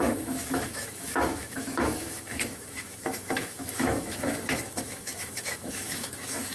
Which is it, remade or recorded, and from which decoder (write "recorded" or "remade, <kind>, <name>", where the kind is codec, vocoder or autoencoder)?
remade, autoencoder, DAC-VAE